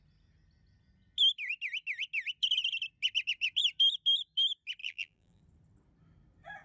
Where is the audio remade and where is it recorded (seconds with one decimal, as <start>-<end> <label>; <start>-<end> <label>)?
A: 0.0-4.8 recorded; 4.8-5.4 remade; 5.4-6.6 recorded